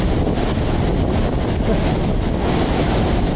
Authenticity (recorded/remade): recorded